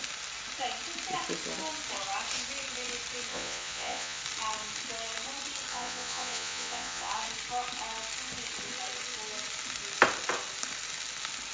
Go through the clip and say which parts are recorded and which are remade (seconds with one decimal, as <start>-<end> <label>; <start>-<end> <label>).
0.0-3.3 recorded; 3.3-4.2 remade; 4.2-5.7 recorded; 5.7-7.1 remade; 7.1-11.5 recorded